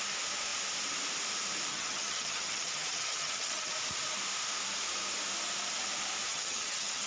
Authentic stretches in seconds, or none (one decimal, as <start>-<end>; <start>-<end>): 0.0-1.7; 3.7-6.3